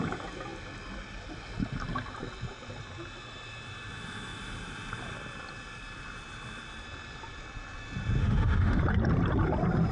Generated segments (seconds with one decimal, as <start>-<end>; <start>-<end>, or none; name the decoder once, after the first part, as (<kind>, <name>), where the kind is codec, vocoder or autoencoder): 8.2-8.8 (autoencoder, DAC-VAE)